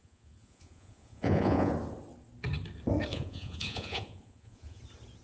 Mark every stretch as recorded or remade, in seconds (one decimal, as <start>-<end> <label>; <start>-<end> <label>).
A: 0.0-1.7 remade; 1.7-3.1 recorded; 3.1-4.8 remade; 4.8-5.2 recorded